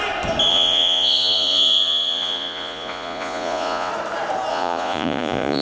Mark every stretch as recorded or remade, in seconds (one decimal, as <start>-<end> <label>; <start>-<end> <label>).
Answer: 0.0-0.5 recorded; 0.5-3.9 remade; 3.9-4.5 recorded; 4.5-5.6 remade

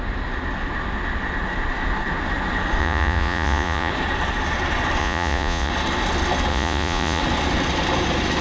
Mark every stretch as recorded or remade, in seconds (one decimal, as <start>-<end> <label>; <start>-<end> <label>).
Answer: 0.0-2.8 recorded; 2.8-3.9 remade; 3.9-5.0 recorded; 5.0-5.7 remade; 5.7-6.5 recorded; 6.5-7.2 remade; 7.2-8.4 recorded

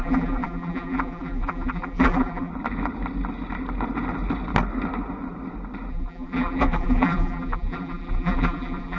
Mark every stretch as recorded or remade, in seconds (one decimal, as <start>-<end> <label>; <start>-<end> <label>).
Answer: 0.0-2.5 remade; 2.5-5.9 recorded; 5.9-9.0 remade

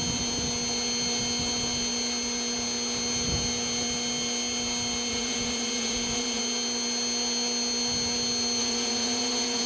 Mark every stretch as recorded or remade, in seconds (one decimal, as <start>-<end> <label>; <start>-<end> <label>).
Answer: 0.0-5.1 recorded; 5.1-6.4 remade; 6.4-8.6 recorded; 8.6-9.7 remade

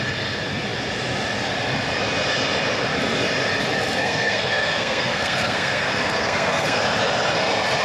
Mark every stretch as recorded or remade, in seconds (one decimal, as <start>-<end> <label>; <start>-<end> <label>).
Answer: 0.0-4.0 recorded; 4.0-6.8 remade; 6.8-7.8 recorded